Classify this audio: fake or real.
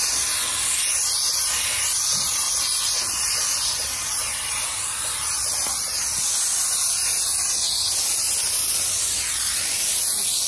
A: real